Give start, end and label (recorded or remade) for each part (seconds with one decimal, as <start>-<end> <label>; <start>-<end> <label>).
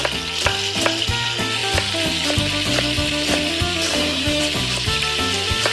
0.0-3.9 recorded; 3.9-4.4 remade; 4.4-5.7 recorded